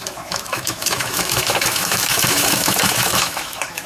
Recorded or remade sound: remade